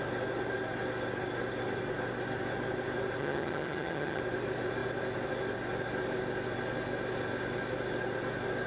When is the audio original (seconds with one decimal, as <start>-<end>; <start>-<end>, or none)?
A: 0.0-3.2; 4.2-8.7